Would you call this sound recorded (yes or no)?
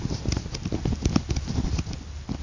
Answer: yes